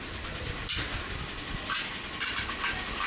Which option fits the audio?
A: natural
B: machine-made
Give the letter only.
A